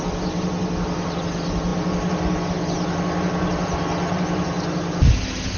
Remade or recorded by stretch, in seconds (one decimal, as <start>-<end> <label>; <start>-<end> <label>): 0.0-5.6 recorded